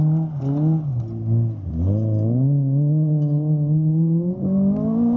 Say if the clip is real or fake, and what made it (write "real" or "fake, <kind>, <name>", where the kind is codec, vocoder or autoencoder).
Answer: real